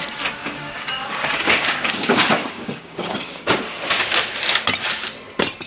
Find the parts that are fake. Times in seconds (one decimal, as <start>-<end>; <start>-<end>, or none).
0.4-3.5